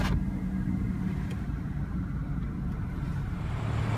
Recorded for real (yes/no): yes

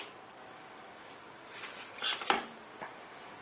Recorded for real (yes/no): yes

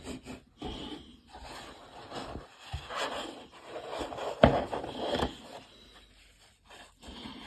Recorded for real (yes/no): yes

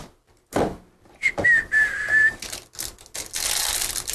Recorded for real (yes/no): yes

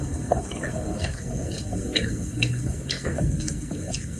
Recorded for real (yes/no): no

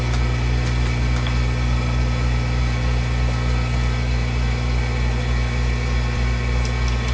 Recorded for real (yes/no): yes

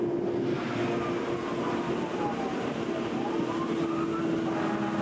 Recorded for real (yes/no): yes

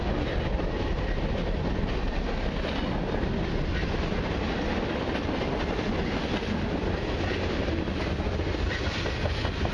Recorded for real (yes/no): yes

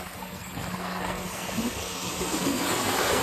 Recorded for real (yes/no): no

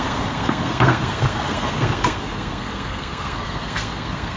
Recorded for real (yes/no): no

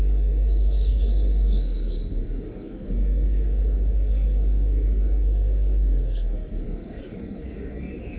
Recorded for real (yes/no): no